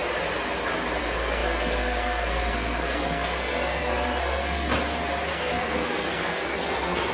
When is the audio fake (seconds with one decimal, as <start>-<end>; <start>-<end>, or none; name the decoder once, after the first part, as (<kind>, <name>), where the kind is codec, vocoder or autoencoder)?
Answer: 1.0-4.7 (codec, SNAC); 5.3-7.1

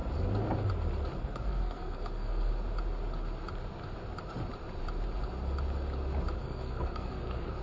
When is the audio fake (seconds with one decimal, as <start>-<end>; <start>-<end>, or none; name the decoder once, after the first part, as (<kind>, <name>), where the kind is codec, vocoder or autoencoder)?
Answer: 1.2-2.5 (codec, SNAC); 6.4-7.6

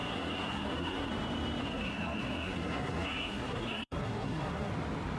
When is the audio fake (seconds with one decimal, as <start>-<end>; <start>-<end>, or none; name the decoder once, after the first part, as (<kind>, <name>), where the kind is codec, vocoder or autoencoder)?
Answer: 0.0-1.1 (codec, SNAC); 1.6-4.7

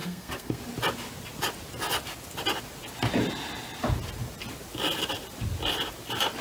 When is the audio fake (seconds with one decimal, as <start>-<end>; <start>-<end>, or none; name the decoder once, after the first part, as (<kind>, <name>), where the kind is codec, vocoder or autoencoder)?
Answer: 0.0-0.6 (codec, SNAC)

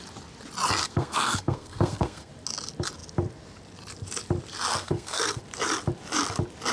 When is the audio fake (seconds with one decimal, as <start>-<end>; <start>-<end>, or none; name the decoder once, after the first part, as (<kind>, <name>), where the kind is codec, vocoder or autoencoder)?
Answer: 0.8-2.3 (codec, SNAC); 4.7-5.4

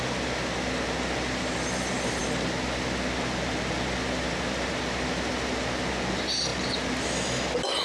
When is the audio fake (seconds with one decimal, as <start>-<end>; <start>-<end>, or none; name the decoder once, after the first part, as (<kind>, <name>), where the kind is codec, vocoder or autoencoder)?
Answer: none

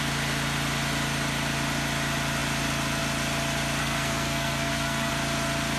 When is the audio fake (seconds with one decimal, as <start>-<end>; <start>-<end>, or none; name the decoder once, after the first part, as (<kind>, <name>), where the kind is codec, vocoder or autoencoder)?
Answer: 3.8-5.1 (codec, SNAC)